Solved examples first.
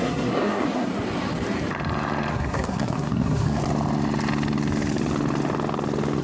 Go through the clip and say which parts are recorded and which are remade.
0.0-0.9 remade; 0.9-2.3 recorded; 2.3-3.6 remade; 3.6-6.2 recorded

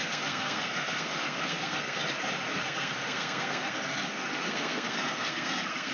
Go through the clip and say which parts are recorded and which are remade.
0.0-2.0 remade; 2.0-2.5 recorded; 2.5-5.9 remade

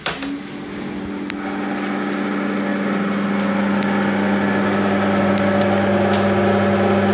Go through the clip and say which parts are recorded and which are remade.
0.0-7.1 recorded